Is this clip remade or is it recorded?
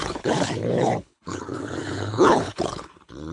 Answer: remade